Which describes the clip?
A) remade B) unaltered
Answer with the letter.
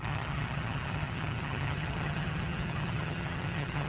A